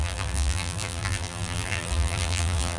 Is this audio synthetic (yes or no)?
yes